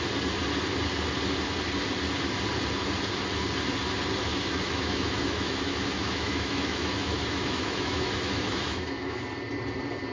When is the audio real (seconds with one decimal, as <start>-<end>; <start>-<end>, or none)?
0.0-4.3; 9.2-10.1